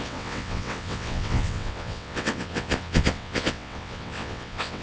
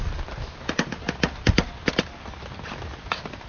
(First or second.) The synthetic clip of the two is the first